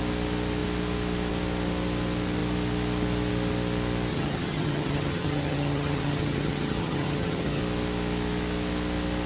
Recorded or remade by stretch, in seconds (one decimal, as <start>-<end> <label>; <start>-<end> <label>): 0.0-4.1 recorded; 4.1-7.6 remade; 7.6-9.3 recorded